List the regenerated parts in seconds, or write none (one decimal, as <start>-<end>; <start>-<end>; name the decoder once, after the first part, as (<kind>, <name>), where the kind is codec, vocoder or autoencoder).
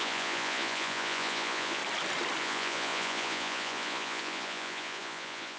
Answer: 0.0-1.8 (vocoder, Vocos); 2.4-5.6